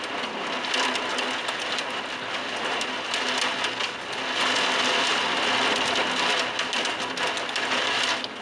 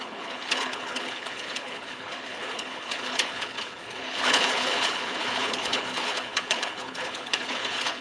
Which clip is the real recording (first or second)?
first